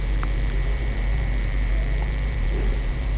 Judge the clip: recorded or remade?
remade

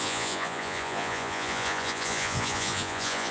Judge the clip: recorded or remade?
remade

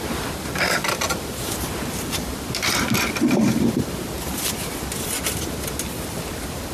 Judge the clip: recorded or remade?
remade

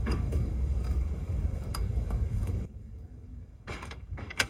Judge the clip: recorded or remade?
remade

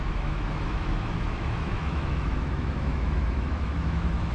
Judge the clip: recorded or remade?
remade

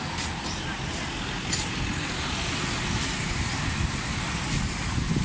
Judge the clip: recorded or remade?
recorded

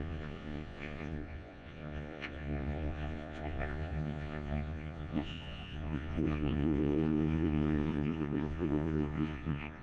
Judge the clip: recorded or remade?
remade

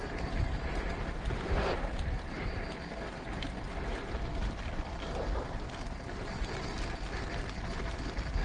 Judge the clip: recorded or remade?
recorded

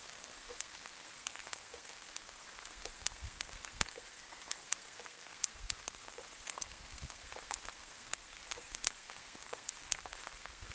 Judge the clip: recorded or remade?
remade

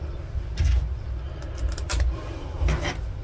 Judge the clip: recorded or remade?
recorded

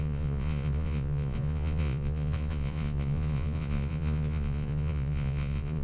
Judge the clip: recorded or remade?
remade